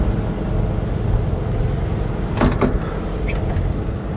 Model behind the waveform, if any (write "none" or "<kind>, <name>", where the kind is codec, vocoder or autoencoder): none